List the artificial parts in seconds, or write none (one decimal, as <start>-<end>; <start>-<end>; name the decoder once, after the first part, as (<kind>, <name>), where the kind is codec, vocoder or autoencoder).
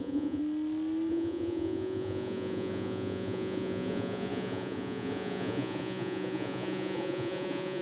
0.0-0.4 (vocoder, Vocos); 1.1-7.8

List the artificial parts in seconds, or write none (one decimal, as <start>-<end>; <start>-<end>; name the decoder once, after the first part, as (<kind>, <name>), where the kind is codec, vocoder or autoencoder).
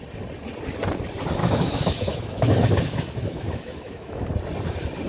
1.4-4.2 (autoencoder, DAC-VAE)